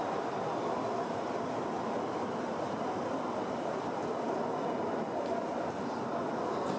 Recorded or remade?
recorded